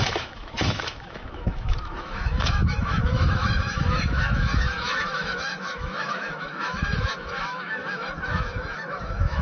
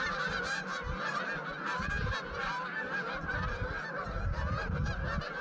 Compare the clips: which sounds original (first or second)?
second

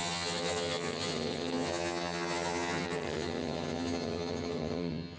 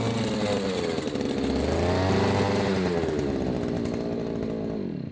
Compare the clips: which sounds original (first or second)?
second